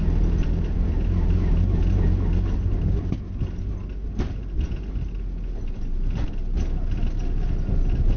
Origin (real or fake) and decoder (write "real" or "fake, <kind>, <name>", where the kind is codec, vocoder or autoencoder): real